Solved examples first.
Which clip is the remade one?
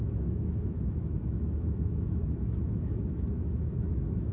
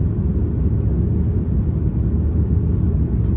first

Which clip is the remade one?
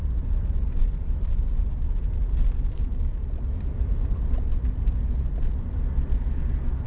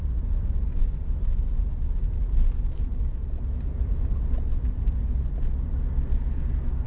first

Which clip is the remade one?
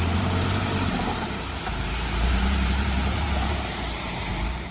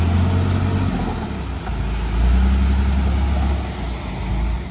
first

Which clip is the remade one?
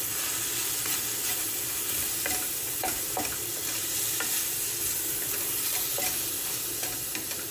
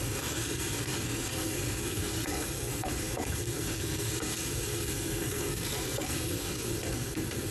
second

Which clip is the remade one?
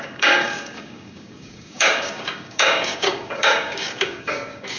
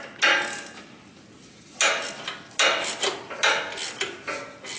first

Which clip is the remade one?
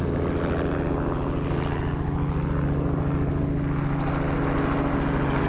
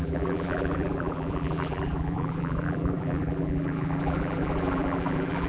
second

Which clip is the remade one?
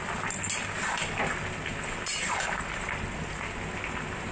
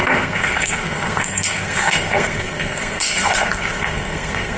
second